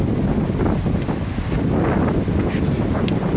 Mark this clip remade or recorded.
recorded